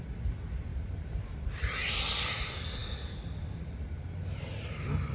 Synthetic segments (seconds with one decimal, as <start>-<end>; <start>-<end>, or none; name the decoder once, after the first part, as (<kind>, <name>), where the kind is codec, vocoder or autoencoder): 0.7-1.9 (vocoder, BigVGAN v2)